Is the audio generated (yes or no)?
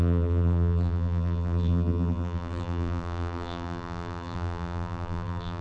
yes